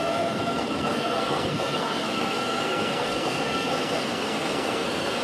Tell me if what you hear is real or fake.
fake